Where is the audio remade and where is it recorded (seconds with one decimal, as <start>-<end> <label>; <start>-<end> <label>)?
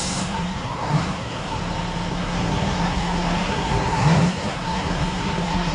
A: 0.0-1.6 remade; 1.6-2.1 recorded; 2.1-5.7 remade